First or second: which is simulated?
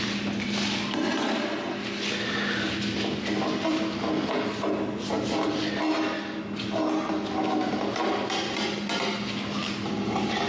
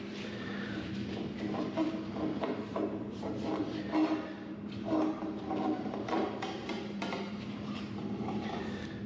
second